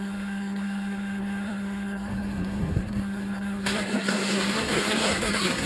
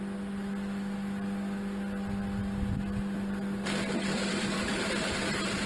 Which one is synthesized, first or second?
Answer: first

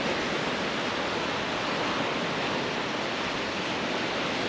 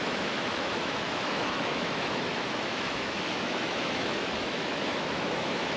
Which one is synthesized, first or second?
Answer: second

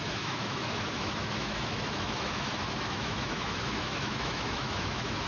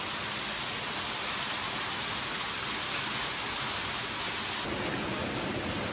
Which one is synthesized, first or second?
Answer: first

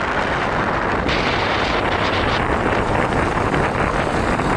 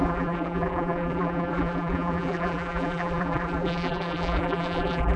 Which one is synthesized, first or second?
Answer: second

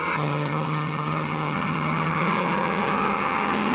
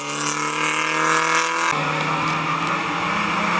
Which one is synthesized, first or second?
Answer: first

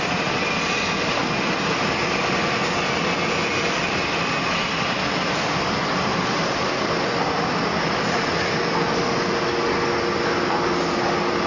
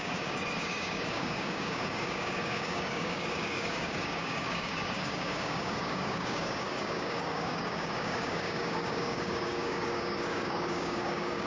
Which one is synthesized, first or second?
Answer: second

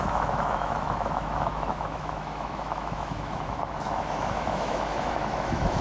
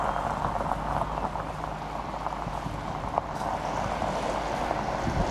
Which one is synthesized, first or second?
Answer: first